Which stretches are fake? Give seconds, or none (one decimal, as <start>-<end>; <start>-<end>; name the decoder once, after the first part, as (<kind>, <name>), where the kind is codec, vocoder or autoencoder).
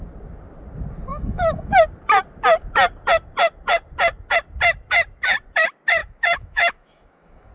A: 1.1-1.8 (autoencoder, DAC-VAE); 6.0-7.5